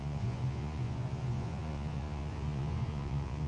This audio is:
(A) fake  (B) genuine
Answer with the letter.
A